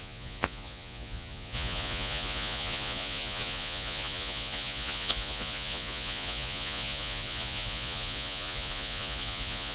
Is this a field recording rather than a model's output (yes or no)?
no